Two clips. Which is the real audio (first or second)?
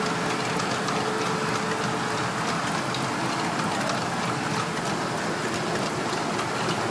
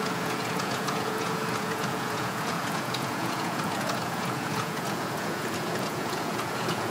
first